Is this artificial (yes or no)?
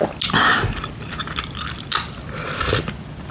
no